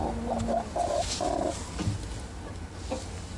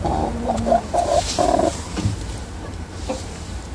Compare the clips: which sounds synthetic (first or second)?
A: second